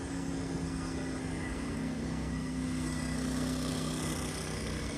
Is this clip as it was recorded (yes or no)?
no